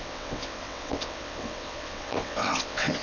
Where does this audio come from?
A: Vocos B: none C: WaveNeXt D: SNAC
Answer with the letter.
C